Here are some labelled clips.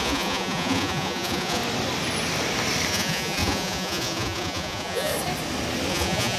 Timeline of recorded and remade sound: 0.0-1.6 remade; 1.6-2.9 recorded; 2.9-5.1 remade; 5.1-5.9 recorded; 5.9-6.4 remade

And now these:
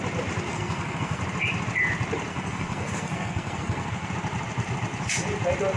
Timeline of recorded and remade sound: 0.0-0.5 recorded; 0.5-1.2 remade; 1.2-2.3 recorded; 2.3-4.1 remade; 4.1-5.8 recorded

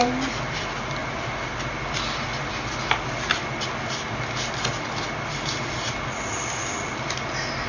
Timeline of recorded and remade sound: 0.0-7.7 recorded

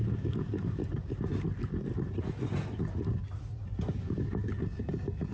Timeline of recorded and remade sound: 0.0-0.8 remade; 0.8-4.0 recorded; 4.0-4.4 remade; 4.4-5.3 recorded

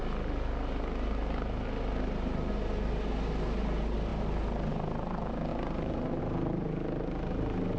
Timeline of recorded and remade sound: 0.0-5.5 recorded; 5.5-6.2 remade; 6.2-7.8 recorded

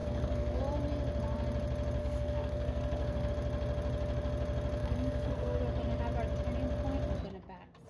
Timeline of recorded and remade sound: 0.0-0.6 remade; 0.6-2.0 recorded; 2.0-3.3 remade; 3.3-4.8 recorded; 4.8-5.6 remade; 5.6-7.9 recorded

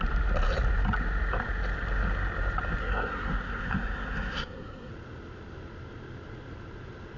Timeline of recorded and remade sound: 0.0-2.8 recorded; 2.8-4.9 remade; 4.9-7.2 recorded